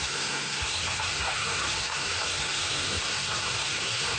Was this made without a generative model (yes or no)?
no